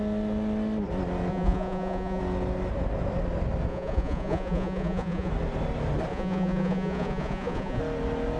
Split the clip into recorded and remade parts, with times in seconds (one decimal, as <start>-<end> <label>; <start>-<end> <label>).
0.0-1.3 recorded; 1.3-2.2 remade; 2.2-3.7 recorded; 3.7-5.3 remade; 5.3-6.1 recorded; 6.1-7.8 remade; 7.8-8.4 recorded

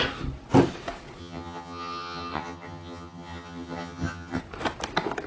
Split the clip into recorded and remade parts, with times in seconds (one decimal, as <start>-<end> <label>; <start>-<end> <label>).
0.0-1.2 recorded; 1.2-4.4 remade; 4.4-5.3 recorded

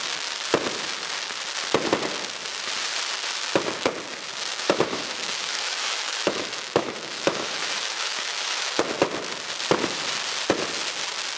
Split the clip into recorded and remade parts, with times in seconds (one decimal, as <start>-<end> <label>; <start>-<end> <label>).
0.0-4.5 recorded; 4.5-8.8 remade; 8.8-11.4 recorded

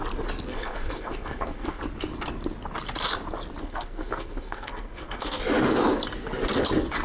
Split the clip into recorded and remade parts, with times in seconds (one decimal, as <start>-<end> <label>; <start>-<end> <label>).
0.0-0.5 recorded; 0.5-1.8 remade; 1.8-3.6 recorded; 3.6-5.4 remade; 5.4-7.0 recorded

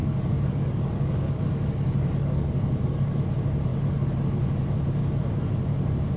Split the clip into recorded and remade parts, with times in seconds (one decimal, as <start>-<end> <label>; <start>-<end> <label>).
0.0-3.2 remade; 3.2-6.2 recorded

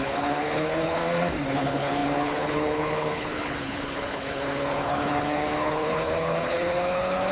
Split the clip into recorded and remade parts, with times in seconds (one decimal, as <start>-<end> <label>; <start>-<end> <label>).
0.0-1.0 remade; 1.0-1.5 recorded; 1.5-7.3 remade

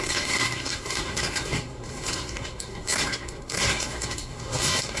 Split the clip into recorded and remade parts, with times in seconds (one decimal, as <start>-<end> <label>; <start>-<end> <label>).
0.0-5.0 remade

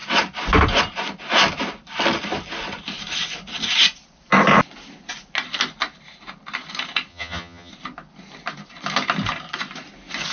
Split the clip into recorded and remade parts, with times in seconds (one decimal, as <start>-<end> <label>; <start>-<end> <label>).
0.0-7.1 recorded; 7.1-7.7 remade; 7.7-10.3 recorded